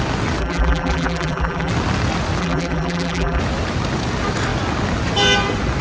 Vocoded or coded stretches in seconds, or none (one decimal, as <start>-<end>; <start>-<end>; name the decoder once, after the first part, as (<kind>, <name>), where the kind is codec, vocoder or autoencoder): 0.4-1.7 (vocoder, BigVGAN v2); 2.4-3.4